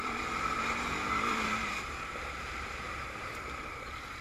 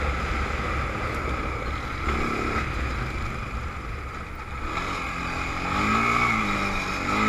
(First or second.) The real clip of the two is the second